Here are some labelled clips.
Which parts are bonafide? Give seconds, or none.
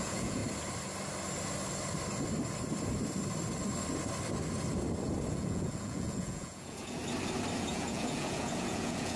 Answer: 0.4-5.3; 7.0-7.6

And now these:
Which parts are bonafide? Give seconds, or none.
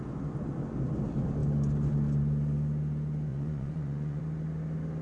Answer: 0.0-3.3; 4.2-5.0